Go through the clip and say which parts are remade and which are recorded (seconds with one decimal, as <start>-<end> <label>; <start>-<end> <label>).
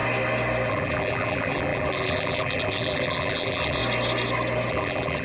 0.0-0.7 recorded; 0.7-3.8 remade; 3.8-4.7 recorded; 4.7-5.2 remade